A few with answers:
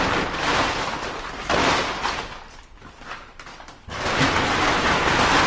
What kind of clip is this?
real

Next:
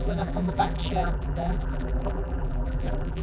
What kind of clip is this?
fake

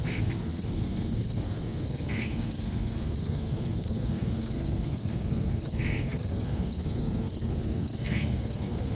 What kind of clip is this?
fake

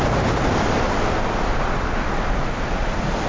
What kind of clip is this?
real